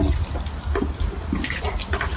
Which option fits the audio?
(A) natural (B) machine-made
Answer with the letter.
A